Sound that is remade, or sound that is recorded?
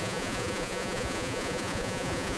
remade